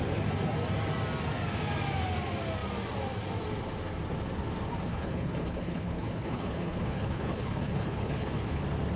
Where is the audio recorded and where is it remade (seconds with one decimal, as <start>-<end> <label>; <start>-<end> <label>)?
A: 0.0-4.9 recorded; 4.9-8.6 remade; 8.6-9.0 recorded